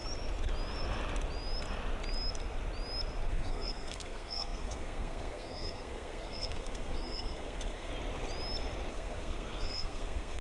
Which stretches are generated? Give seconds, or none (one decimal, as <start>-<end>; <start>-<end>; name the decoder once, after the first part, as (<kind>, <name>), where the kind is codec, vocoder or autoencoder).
3.3-7.9 (codec, SNAC); 8.9-10.4